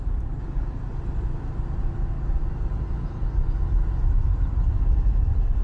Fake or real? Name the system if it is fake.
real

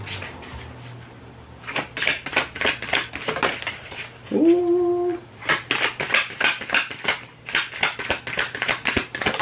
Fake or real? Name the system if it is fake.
real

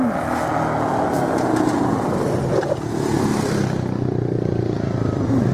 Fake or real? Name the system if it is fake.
real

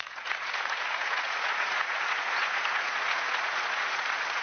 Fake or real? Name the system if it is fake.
fake, vocoder, Vocos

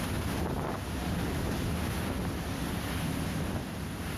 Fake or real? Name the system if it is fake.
real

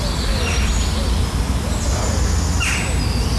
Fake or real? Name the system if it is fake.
real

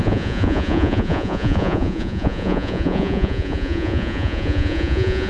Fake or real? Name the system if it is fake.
fake, vocoder, Vocos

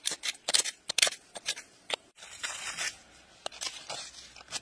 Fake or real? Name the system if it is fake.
fake, vocoder, BigVGAN v2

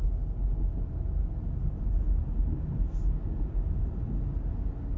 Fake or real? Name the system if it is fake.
real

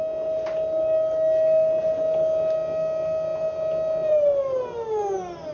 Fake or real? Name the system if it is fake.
real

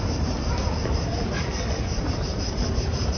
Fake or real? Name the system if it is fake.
fake, vocoder, BigVGAN v2